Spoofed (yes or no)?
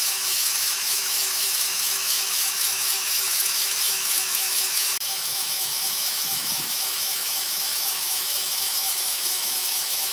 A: yes